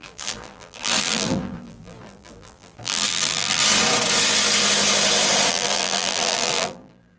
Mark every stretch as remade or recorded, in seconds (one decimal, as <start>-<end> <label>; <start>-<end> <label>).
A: 0.0-3.6 remade; 3.6-5.5 recorded; 5.5-7.2 remade

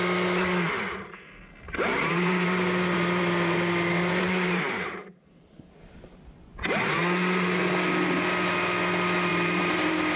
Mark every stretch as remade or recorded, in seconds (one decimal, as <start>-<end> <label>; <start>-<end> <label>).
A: 0.0-1.9 recorded; 1.9-6.0 remade; 6.0-9.3 recorded; 9.3-10.2 remade